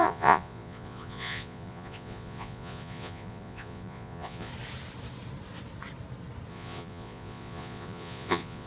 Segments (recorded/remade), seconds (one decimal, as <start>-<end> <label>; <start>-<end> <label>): 0.0-4.5 remade; 4.5-6.5 recorded; 6.5-8.7 remade

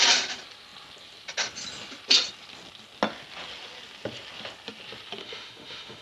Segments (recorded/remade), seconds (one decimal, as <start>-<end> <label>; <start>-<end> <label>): 0.0-5.2 recorded; 5.2-6.0 remade

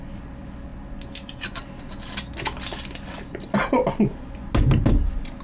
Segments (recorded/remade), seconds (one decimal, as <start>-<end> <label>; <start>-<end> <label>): 0.0-5.4 recorded

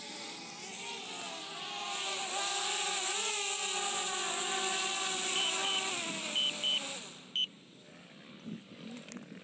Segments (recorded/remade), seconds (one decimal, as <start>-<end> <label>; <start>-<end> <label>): 0.0-5.6 recorded; 5.6-6.1 remade; 6.1-9.4 recorded

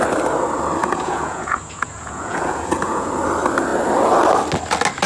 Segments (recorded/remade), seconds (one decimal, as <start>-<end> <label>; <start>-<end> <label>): 0.0-0.8 recorded; 0.8-3.1 remade; 3.1-5.1 recorded

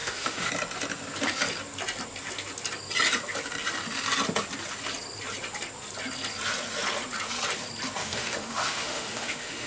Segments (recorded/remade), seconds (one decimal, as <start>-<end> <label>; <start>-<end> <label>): 0.0-0.5 remade; 0.5-8.0 recorded; 8.0-9.7 remade

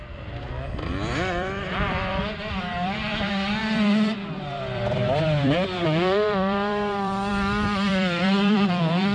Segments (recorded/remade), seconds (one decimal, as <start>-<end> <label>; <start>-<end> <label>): 0.0-9.1 remade

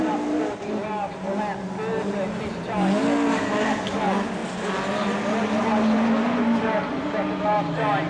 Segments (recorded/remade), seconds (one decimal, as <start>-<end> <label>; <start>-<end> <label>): 0.0-8.1 recorded